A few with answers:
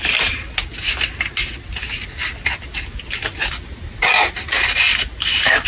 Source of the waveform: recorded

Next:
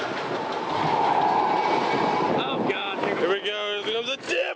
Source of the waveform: recorded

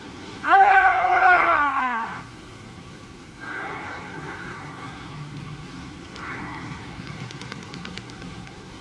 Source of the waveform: remade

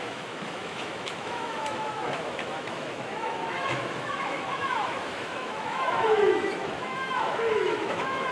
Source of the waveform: remade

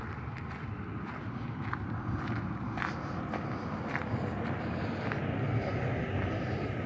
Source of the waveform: recorded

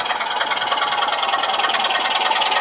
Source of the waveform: recorded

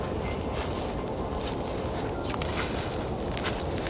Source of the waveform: recorded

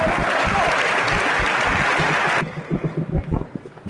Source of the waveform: recorded